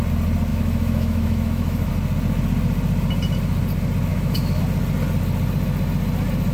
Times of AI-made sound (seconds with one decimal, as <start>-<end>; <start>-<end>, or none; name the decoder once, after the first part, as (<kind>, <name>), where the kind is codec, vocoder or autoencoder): 0.5-1.9 (autoencoder, DAC-VAE); 4.1-4.6